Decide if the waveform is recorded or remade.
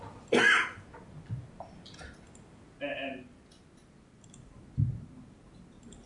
recorded